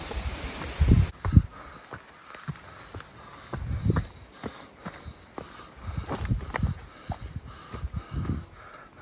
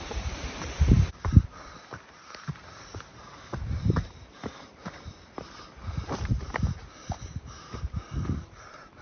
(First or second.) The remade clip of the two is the second